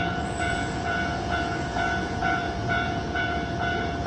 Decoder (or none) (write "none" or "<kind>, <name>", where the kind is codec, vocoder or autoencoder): vocoder, Vocos